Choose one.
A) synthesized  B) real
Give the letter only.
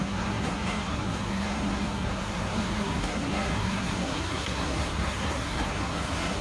A